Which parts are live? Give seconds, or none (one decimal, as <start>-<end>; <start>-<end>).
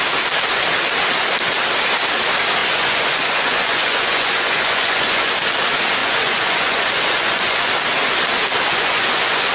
0.0-2.6; 5.3-6.0; 7.7-8.7